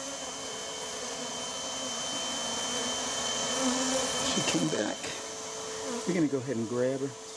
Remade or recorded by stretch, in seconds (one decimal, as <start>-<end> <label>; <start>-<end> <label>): 0.0-0.9 recorded; 0.9-1.4 remade; 1.4-3.0 recorded; 3.0-5.2 remade; 5.2-7.4 recorded